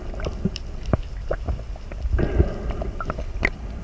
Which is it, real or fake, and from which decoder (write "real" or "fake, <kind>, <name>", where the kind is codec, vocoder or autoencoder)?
real